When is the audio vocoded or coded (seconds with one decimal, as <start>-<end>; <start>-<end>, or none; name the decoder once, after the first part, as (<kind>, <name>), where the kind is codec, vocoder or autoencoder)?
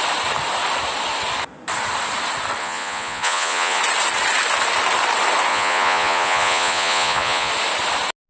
2.6-3.8 (vocoder, Vocos); 5.5-7.5